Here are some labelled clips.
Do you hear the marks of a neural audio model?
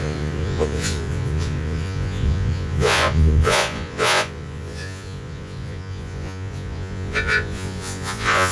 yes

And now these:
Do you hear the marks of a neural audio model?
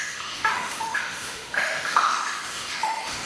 yes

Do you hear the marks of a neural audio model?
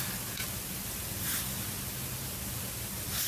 no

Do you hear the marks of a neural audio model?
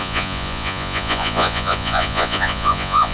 yes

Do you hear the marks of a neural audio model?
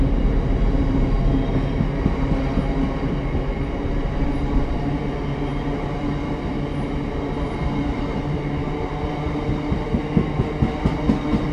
no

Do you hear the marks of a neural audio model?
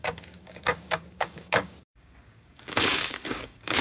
yes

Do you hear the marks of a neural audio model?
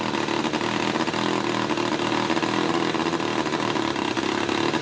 no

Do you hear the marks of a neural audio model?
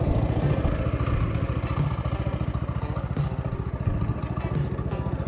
no